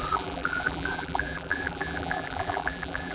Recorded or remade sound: remade